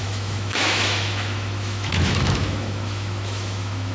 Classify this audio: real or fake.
fake